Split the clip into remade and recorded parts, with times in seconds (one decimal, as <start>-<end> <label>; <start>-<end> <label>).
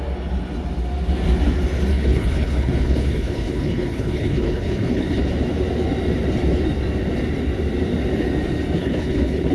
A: 0.0-1.9 recorded; 1.9-5.2 remade; 5.2-8.8 recorded; 8.8-9.5 remade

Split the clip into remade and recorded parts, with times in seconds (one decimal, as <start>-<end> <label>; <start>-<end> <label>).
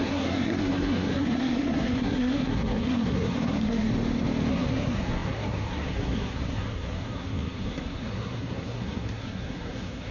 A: 0.0-3.9 remade; 3.9-4.5 recorded; 4.5-10.1 remade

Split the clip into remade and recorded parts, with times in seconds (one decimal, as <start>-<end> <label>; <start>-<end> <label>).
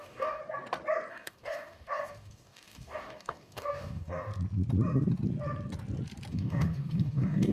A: 0.0-0.4 remade; 0.4-1.1 recorded; 1.1-4.3 remade; 4.3-6.3 recorded; 6.3-7.5 remade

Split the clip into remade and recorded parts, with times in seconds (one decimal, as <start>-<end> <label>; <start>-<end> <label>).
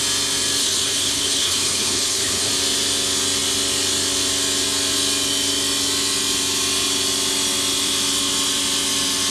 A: 0.0-0.6 recorded; 0.6-2.5 remade; 2.5-9.3 recorded